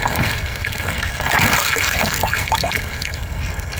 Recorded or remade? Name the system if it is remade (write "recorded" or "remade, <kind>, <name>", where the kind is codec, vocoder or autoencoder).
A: remade, codec, SNAC